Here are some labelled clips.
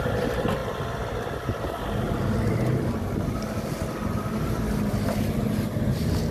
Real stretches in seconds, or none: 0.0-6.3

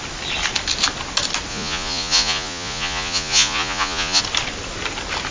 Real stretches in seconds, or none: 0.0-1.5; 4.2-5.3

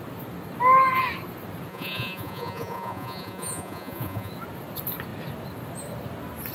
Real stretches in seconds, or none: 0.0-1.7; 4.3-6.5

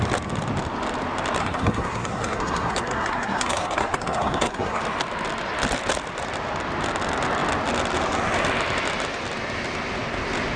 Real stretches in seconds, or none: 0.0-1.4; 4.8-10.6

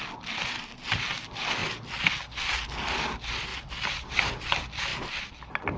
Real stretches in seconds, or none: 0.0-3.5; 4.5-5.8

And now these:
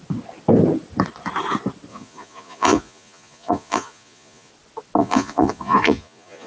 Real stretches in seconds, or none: 0.0-1.9; 4.5-5.0